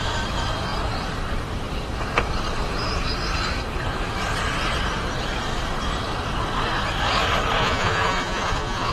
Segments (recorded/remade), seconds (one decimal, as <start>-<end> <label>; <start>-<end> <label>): 0.0-7.6 recorded; 7.6-8.9 remade